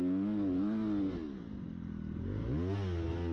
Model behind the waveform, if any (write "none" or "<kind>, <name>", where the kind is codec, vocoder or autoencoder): none